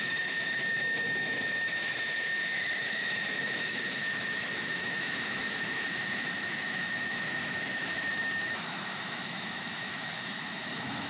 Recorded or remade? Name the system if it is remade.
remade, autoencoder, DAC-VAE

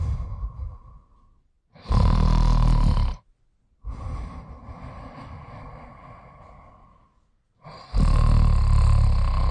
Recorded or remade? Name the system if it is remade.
recorded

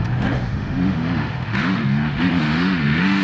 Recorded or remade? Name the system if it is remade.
remade, autoencoder, DAC-VAE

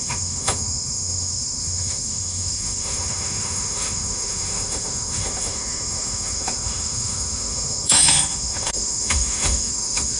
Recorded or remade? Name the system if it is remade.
remade, autoencoder, DAC-VAE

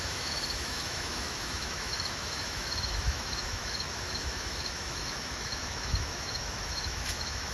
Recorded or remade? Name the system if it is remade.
remade, autoencoder, DAC-VAE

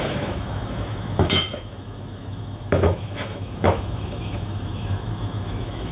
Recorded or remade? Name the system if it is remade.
remade, autoencoder, DAC-VAE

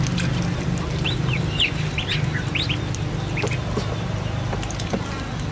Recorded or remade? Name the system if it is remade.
recorded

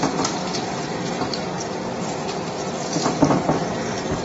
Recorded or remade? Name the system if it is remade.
recorded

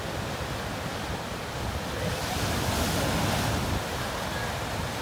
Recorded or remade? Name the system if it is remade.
recorded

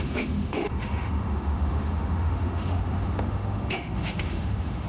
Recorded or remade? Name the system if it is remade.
remade, autoencoder, DAC-VAE